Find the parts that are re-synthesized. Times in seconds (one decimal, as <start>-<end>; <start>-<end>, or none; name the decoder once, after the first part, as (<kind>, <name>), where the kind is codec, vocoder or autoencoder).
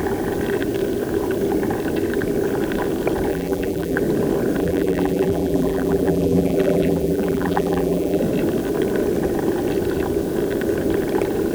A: 3.3-4.0 (vocoder, BigVGAN v2); 4.6-8.2